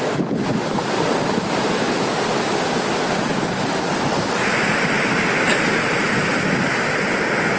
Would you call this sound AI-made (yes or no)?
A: no